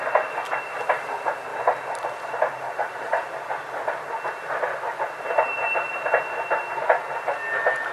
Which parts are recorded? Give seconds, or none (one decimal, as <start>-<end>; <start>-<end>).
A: 0.0-1.5; 2.9-7.9